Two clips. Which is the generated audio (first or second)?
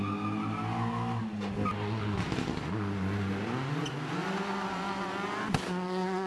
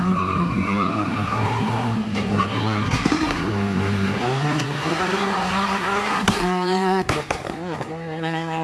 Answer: second